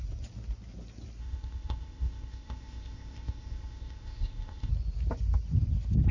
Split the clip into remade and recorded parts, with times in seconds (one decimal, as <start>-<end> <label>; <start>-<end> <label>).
0.0-1.2 recorded; 1.2-4.7 remade; 4.7-6.1 recorded

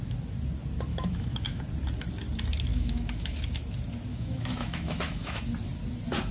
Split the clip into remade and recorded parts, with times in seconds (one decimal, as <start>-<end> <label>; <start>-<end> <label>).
0.0-0.9 recorded; 0.9-1.6 remade; 1.6-2.7 recorded; 2.7-3.5 remade; 3.5-4.1 recorded; 4.1-5.4 remade; 5.4-6.3 recorded

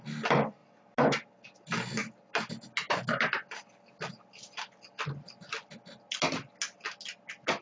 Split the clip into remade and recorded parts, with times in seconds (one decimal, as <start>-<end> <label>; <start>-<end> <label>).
0.0-7.6 recorded

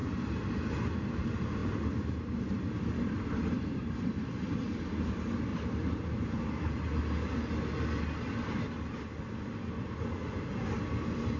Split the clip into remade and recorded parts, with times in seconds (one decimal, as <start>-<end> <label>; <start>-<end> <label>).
0.0-1.6 recorded; 1.6-5.1 remade; 5.1-5.5 recorded; 5.5-7.0 remade; 7.0-11.4 recorded

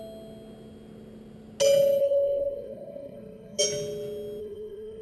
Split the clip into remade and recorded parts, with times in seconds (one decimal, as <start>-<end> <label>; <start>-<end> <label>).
0.0-2.0 recorded; 2.0-3.6 remade; 3.6-4.4 recorded; 4.4-5.0 remade

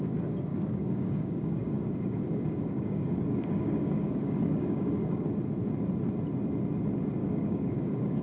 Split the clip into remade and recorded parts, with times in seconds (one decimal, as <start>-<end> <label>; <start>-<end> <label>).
0.0-0.5 recorded; 0.5-5.3 remade; 5.3-7.2 recorded; 7.2-8.2 remade